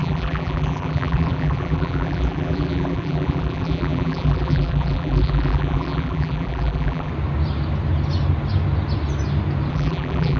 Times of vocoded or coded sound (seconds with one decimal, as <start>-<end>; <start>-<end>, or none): 0.0-7.1; 9.7-10.4

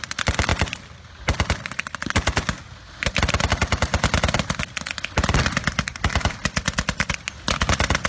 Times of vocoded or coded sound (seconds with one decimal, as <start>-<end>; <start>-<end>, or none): 3.9-4.6; 6.4-7.1